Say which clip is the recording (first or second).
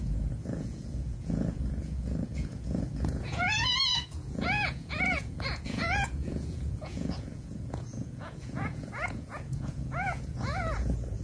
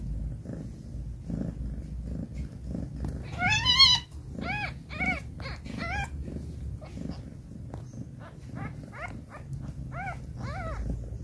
second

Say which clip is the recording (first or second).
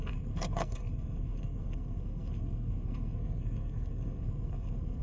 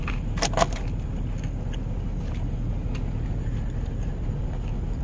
second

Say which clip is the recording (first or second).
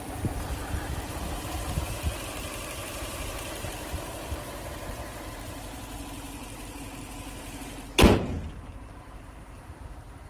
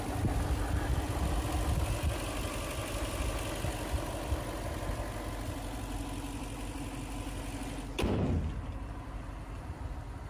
second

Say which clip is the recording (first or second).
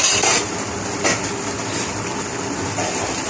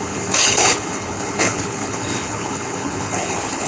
first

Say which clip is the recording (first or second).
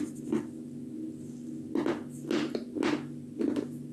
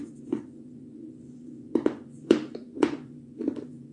first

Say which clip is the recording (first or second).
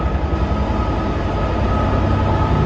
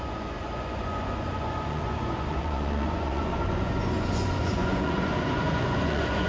first